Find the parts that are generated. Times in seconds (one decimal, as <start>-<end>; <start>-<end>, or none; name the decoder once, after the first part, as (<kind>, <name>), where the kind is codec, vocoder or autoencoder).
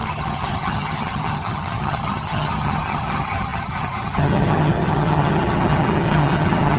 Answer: 0.0-6.8 (vocoder, HiFi-GAN)